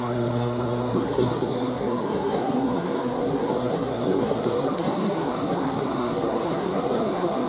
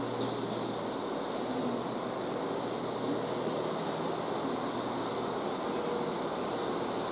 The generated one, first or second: first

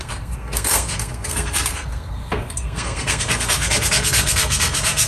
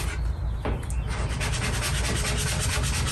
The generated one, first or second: first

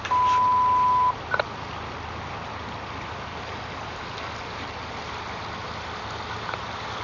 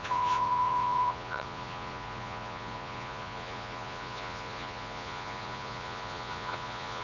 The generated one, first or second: second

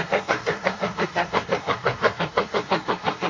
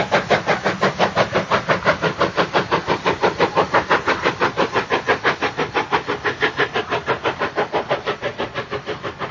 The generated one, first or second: first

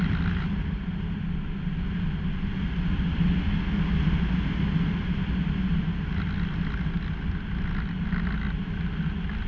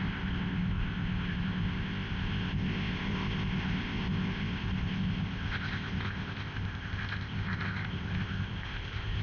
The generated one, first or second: second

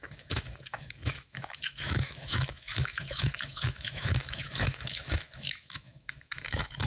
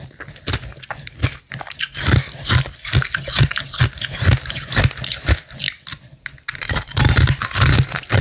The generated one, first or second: first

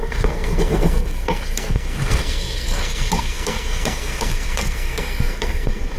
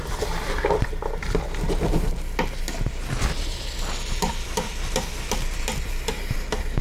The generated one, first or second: first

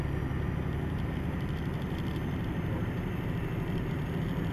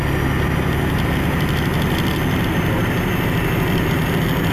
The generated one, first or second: first